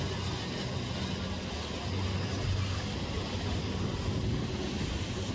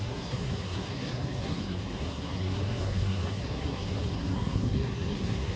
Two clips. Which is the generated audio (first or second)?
second